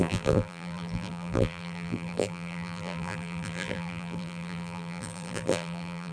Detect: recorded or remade remade